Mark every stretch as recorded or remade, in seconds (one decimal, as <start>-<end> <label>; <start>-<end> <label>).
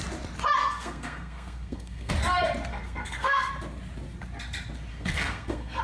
0.0-0.6 recorded; 0.6-2.1 remade; 2.1-2.7 recorded; 2.7-3.5 remade; 3.5-4.9 recorded; 4.9-5.8 remade